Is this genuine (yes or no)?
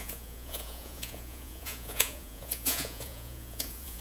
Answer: no